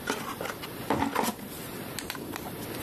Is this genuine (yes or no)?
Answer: yes